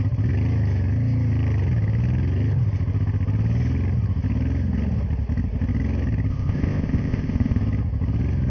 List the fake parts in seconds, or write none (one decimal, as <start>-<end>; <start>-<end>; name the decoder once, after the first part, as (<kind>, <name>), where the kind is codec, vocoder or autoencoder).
6.3-7.6 (codec, ZipCodec)